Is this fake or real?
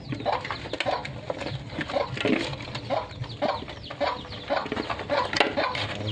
real